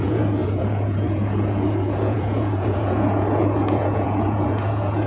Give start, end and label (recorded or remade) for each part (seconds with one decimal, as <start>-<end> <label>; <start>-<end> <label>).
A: 0.0-5.1 remade